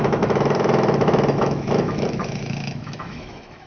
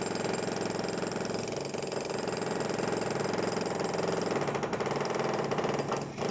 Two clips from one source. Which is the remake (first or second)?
first